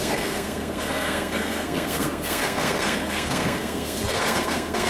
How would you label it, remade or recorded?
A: remade